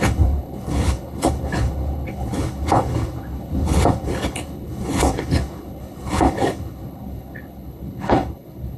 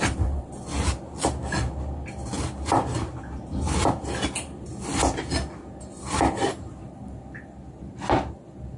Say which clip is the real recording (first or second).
second